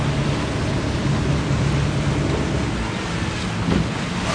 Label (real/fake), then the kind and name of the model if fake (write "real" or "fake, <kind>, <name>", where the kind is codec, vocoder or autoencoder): real